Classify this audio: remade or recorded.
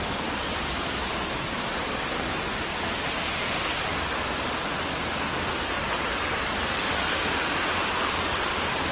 recorded